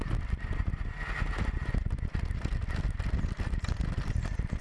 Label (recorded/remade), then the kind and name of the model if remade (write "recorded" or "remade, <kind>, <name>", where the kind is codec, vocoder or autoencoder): recorded